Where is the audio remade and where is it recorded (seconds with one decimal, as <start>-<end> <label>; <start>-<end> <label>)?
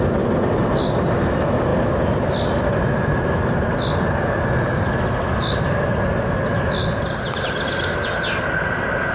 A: 0.0-9.1 recorded